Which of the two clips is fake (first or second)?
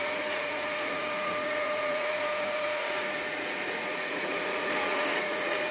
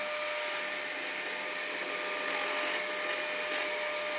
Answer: first